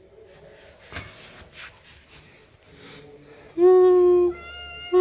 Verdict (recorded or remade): recorded